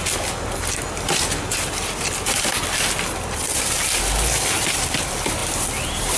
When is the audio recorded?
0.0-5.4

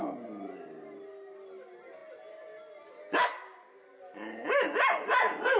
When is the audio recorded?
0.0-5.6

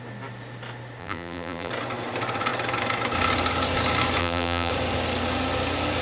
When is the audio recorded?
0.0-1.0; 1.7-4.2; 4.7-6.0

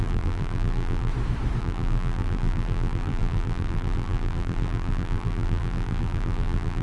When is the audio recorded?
1.1-1.6

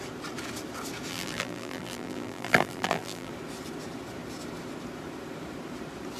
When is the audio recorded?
0.0-1.1; 3.3-6.2